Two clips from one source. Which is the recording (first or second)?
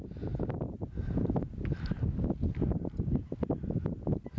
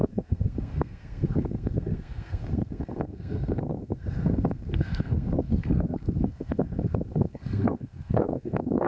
first